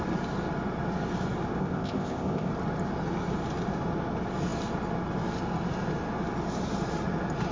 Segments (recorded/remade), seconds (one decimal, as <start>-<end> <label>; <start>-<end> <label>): 0.0-1.6 recorded; 1.6-2.5 remade; 2.5-7.5 recorded